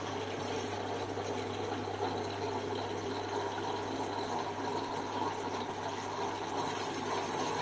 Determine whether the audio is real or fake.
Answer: real